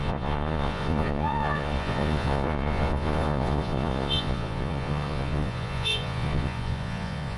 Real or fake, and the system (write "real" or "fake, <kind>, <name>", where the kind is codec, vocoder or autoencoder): fake, vocoder, Vocos